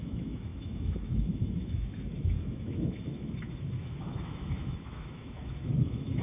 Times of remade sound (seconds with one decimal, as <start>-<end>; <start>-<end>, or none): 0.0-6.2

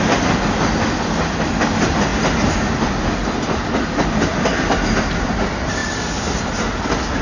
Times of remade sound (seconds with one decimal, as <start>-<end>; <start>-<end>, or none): none

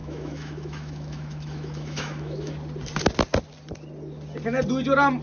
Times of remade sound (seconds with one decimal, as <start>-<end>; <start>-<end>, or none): 0.0-2.5

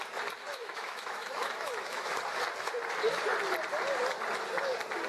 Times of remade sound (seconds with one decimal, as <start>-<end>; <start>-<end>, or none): 0.5-2.2